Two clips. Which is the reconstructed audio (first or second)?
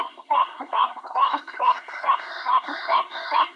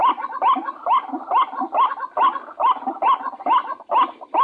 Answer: first